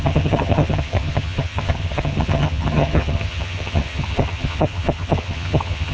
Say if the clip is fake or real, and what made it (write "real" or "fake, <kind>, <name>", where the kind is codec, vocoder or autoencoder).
fake, vocoder, HiFi-GAN